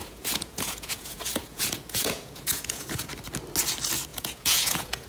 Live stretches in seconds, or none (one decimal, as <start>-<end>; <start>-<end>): 3.1-4.1